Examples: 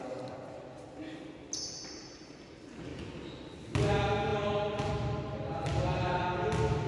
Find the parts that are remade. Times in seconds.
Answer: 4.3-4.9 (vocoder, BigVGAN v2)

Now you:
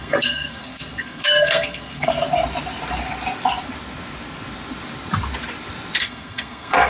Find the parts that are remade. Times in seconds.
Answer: 0.0-2.1 (codec, SNAC); 6.0-6.9

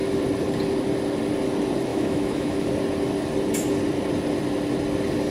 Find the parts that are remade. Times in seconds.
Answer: 1.9-2.7 (autoencoder, DAC-VAE)